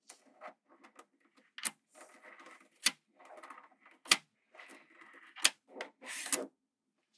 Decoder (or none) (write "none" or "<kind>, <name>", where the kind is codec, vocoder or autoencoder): none